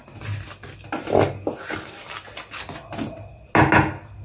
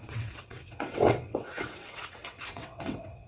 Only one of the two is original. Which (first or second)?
first